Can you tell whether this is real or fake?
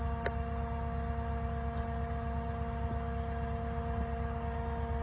real